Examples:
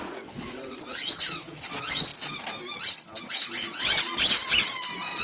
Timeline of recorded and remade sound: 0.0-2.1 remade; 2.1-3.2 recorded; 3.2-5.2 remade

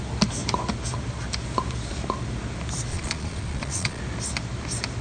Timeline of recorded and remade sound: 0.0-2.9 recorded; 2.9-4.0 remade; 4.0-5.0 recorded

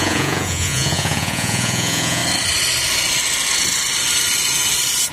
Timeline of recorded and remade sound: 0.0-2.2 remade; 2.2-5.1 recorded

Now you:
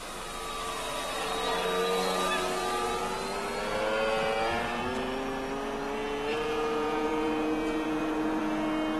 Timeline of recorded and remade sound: 0.0-6.3 recorded; 6.3-8.4 remade; 8.4-9.0 recorded